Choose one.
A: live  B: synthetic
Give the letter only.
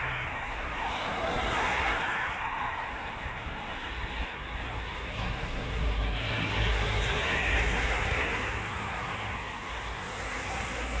B